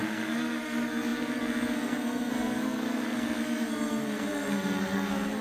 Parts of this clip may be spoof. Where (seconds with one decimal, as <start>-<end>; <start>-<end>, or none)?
0.0-5.4